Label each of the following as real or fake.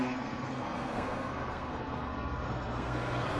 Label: fake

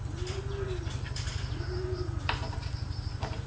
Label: real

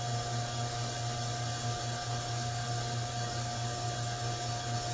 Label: real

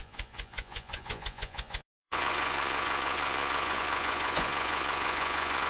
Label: fake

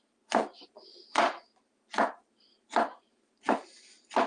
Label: fake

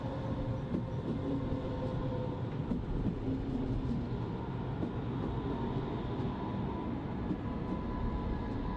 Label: real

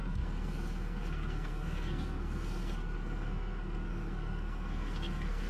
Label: fake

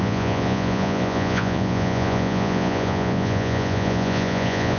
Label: fake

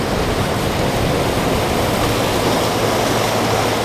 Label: real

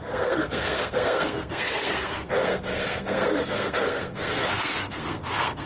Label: fake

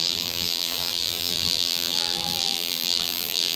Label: fake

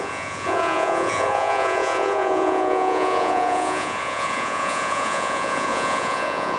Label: fake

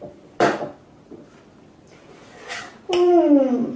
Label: real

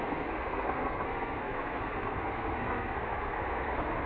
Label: fake